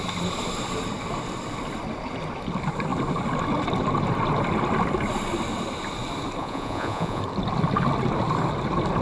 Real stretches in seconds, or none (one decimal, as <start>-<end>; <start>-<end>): 0.0-6.4; 7.2-9.0